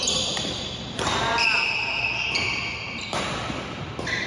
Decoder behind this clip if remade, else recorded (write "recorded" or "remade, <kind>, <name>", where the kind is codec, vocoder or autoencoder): recorded